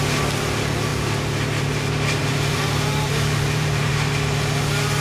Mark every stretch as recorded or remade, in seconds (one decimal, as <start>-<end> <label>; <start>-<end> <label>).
0.0-0.9 recorded; 0.9-3.9 remade; 3.9-5.0 recorded

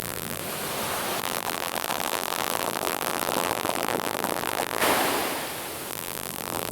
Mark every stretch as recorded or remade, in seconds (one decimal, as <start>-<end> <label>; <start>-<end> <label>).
0.0-0.4 remade; 0.4-1.2 recorded; 1.2-4.8 remade; 4.8-5.9 recorded; 5.9-6.7 remade

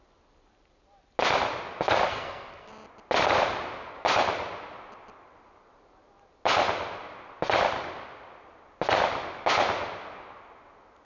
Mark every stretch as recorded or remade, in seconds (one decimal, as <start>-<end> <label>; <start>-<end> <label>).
0.0-2.1 recorded; 2.1-2.7 remade; 2.7-11.0 recorded

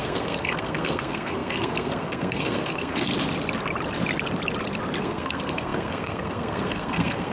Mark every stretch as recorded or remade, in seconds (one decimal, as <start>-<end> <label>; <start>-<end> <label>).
0.0-3.1 remade; 3.1-5.0 recorded; 5.0-7.3 remade

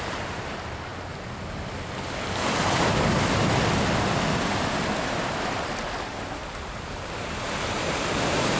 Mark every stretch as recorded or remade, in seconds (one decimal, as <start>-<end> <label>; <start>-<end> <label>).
0.0-0.9 remade; 0.9-5.2 recorded; 5.2-8.6 remade

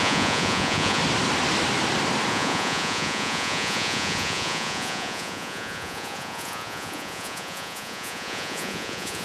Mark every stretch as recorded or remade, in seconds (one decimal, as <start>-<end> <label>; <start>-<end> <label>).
0.0-1.0 remade; 1.0-2.3 recorded; 2.3-9.2 remade